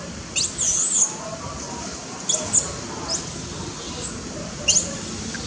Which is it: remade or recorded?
recorded